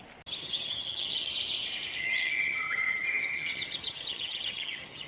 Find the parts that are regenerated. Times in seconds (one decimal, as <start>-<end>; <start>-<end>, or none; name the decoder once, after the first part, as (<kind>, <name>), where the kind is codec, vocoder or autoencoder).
0.4-1.3 (vocoder, HiFi-GAN); 2.0-5.1